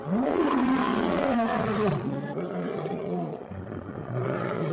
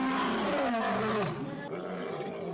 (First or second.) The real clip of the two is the second